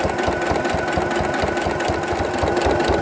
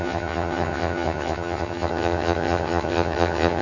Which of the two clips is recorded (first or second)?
first